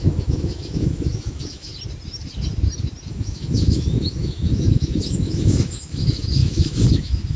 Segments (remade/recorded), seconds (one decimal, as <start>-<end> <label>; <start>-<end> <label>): 0.0-1.7 remade; 1.7-3.1 recorded; 3.1-7.4 remade